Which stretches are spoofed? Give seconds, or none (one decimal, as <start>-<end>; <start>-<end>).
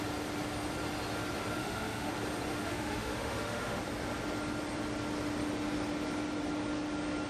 1.6-2.1; 2.5-3.8